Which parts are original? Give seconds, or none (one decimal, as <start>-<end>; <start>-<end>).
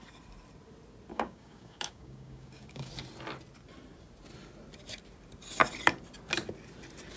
0.0-1.1; 2.9-7.2